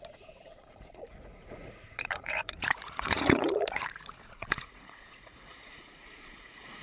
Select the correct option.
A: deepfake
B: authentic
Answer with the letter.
A